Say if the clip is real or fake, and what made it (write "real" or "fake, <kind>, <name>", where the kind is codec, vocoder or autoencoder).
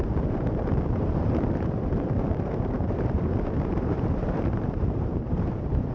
fake, vocoder, BigVGAN v2